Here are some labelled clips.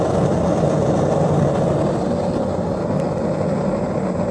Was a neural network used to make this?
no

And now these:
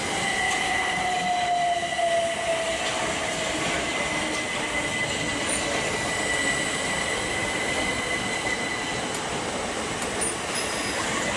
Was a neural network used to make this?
no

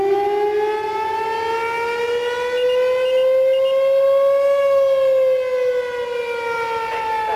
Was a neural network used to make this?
no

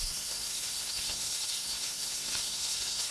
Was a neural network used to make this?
yes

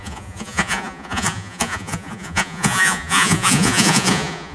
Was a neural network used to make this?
yes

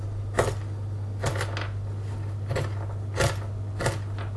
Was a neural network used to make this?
no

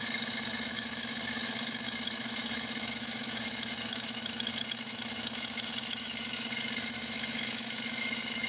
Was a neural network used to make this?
yes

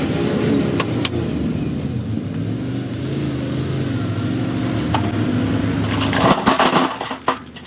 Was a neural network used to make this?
no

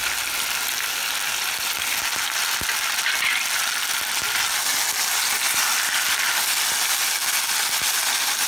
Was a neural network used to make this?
no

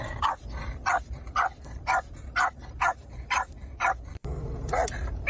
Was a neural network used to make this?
no